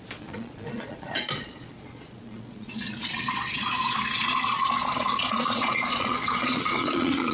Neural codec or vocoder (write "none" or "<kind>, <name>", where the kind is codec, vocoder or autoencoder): vocoder, Vocos